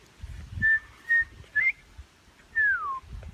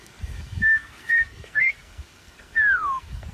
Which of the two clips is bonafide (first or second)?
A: first